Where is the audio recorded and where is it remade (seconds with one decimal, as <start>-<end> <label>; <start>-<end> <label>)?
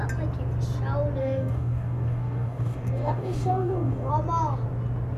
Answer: 0.0-1.2 recorded; 1.2-4.1 remade; 4.1-5.2 recorded